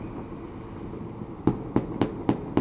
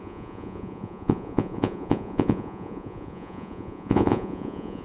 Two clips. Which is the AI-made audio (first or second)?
second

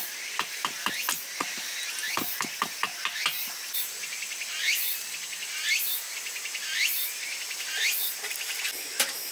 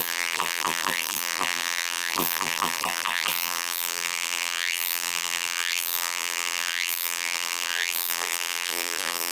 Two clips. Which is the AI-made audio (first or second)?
second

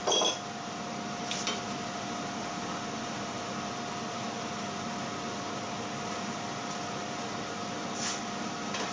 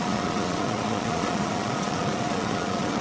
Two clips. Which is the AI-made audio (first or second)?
second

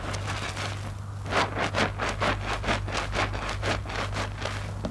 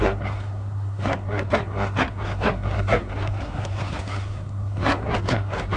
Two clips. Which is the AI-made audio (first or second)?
second